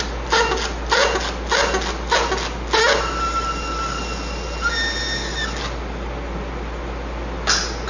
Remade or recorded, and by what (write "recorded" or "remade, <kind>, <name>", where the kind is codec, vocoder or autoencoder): recorded